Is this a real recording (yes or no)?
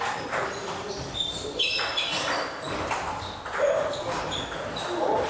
yes